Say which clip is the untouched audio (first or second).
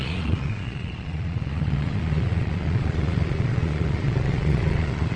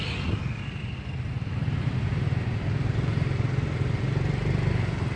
second